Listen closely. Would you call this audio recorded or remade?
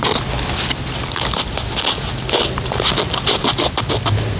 recorded